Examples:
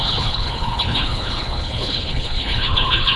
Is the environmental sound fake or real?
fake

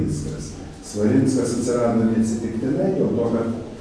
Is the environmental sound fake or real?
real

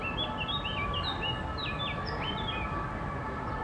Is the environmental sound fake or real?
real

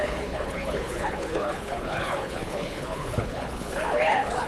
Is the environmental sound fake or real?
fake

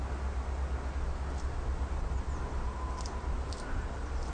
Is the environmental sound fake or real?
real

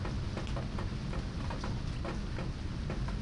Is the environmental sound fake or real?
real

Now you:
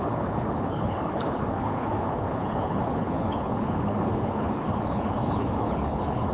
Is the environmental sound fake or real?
fake